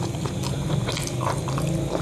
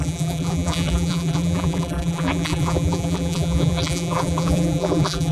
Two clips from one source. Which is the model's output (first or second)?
second